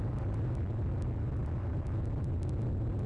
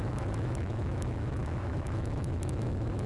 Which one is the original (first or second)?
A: first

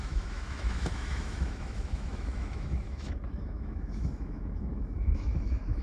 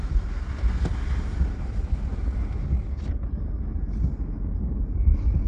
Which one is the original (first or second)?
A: second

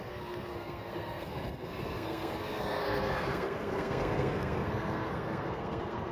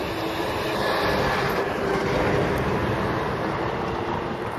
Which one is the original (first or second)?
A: second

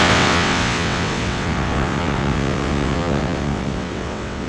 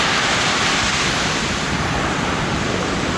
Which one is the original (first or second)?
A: second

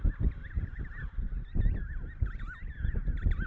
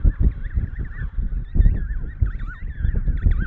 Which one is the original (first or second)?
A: second